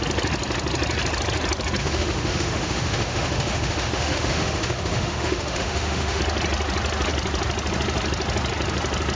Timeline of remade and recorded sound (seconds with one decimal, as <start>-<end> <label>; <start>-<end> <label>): 0.0-1.8 recorded; 1.8-6.2 remade; 6.2-9.1 recorded